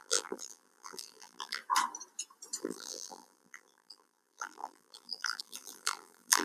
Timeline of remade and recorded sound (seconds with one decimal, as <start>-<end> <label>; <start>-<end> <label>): 0.0-1.6 remade; 1.6-2.6 recorded; 2.6-6.4 remade